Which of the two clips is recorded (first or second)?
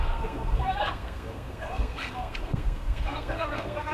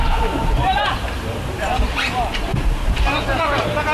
second